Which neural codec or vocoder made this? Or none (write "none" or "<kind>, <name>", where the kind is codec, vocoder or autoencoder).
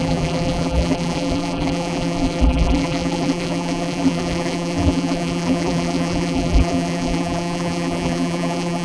vocoder, BigVGAN v2